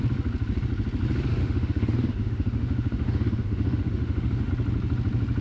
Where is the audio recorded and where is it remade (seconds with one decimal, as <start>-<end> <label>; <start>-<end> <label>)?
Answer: 0.0-1.4 recorded; 1.4-4.5 remade; 4.5-5.4 recorded